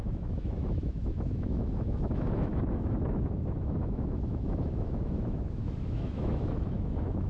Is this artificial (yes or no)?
yes